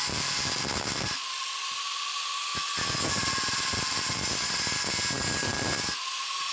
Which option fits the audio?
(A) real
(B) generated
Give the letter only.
A